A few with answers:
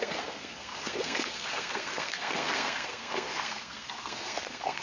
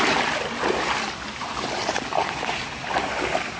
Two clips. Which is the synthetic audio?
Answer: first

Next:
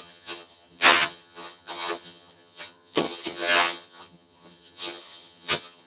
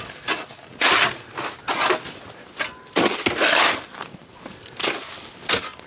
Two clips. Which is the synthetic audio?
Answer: first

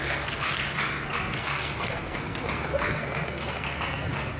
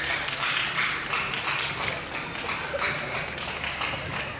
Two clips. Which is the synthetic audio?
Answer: first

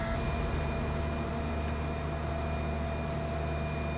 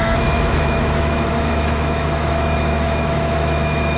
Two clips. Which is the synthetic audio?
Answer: second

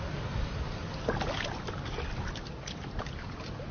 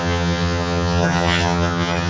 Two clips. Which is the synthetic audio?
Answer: second